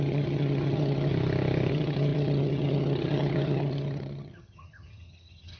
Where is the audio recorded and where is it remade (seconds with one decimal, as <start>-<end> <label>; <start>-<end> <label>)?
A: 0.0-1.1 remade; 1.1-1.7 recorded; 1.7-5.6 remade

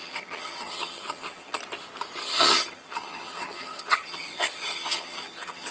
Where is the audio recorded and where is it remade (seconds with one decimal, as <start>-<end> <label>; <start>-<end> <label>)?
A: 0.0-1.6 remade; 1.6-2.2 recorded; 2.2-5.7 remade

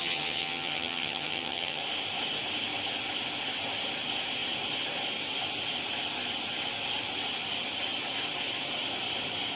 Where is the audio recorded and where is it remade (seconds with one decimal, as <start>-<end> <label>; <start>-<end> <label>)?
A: 0.0-1.8 remade; 1.8-9.6 recorded

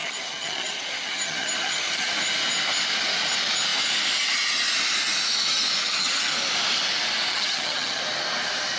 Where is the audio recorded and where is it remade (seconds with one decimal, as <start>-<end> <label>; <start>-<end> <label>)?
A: 0.0-2.1 remade; 2.1-5.8 recorded; 5.8-6.3 remade; 6.3-7.3 recorded; 7.3-8.0 remade; 8.0-8.8 recorded

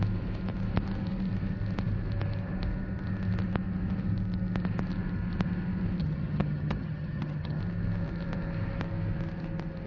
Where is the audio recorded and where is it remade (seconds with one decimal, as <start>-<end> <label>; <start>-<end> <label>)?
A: 0.0-6.0 recorded; 6.0-7.6 remade; 7.6-9.9 recorded

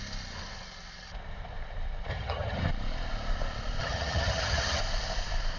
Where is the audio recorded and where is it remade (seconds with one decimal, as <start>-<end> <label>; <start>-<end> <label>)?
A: 0.0-2.1 recorded; 2.1-2.7 remade; 2.7-3.8 recorded; 3.8-4.8 remade; 4.8-5.6 recorded